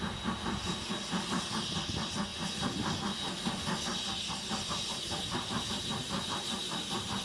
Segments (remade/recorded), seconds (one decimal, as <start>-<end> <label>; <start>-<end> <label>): 0.0-7.2 recorded